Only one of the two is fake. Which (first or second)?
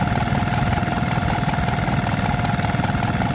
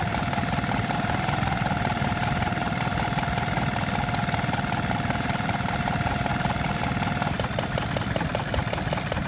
second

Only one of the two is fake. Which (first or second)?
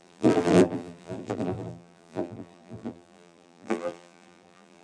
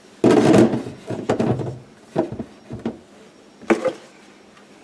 first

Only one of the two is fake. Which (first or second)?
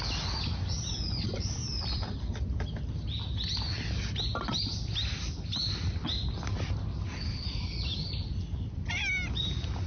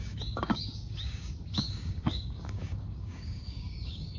second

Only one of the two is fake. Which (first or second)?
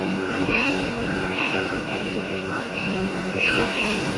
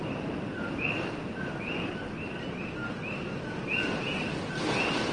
first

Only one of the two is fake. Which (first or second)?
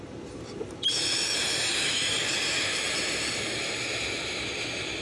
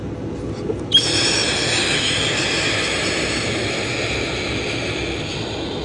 first